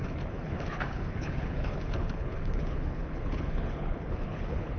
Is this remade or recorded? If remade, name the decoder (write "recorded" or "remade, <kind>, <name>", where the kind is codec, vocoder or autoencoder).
remade, codec, HILCodec